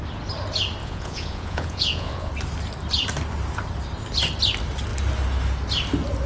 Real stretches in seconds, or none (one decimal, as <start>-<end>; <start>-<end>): 0.0-0.8; 2.3-6.3